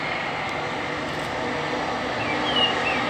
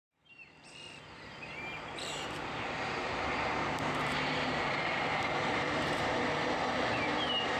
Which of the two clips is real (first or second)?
first